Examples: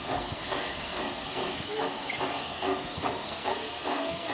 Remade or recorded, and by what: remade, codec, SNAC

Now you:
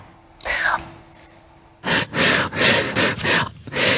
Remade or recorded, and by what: recorded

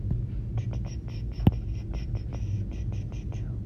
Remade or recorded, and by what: recorded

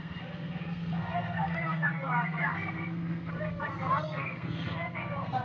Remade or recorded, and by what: remade, codec, SNAC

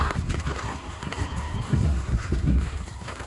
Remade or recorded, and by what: remade, codec, SNAC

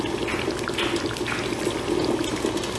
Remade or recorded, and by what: recorded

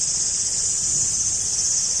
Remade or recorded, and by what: recorded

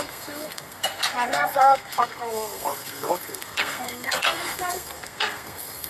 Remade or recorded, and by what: remade, codec, SNAC